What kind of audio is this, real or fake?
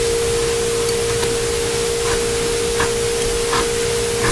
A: real